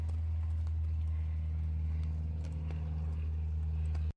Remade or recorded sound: recorded